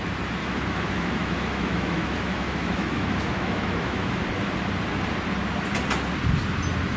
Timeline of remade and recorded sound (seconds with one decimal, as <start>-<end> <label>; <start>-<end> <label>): 0.0-0.4 recorded; 0.4-4.2 remade; 4.2-7.0 recorded